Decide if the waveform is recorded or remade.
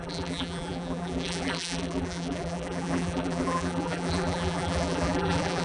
remade